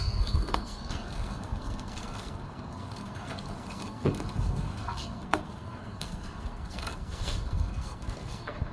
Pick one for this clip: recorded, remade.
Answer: remade